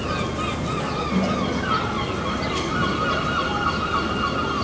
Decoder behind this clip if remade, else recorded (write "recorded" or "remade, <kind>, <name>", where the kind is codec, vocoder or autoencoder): recorded